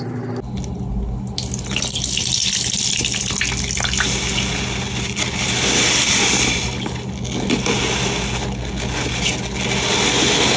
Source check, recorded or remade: recorded